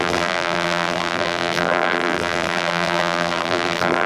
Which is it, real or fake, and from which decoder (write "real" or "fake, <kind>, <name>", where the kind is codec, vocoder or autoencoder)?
fake, vocoder, BigVGAN v2